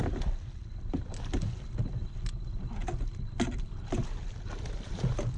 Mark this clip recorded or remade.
recorded